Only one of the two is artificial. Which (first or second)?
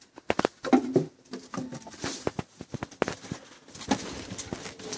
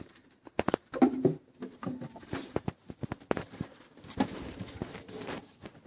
second